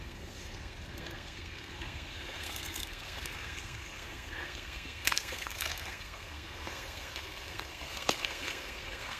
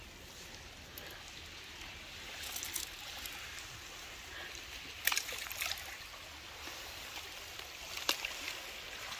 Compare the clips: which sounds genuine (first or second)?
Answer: second